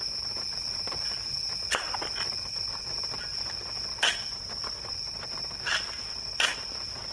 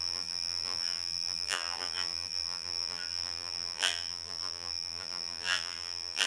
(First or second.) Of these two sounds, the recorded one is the first